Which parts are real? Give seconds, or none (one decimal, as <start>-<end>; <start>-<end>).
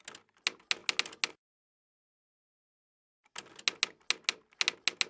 0.0-5.1